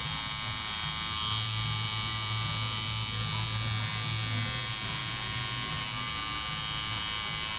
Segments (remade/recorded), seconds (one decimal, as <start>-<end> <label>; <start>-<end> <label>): 0.0-7.6 recorded